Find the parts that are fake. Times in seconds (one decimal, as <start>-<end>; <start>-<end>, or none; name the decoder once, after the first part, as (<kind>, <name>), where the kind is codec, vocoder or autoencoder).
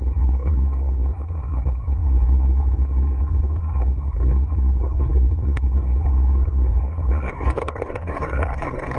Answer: 0.0-9.0 (codec, SNAC)